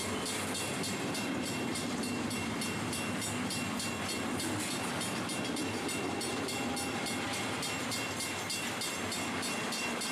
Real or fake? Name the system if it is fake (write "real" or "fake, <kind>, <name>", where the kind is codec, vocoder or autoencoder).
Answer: real